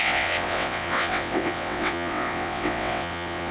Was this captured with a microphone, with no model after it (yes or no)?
no